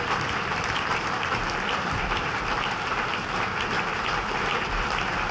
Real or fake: fake